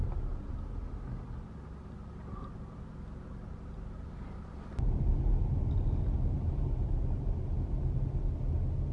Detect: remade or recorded recorded